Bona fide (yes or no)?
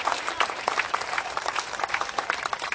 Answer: no